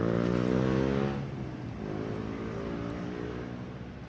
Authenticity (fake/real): real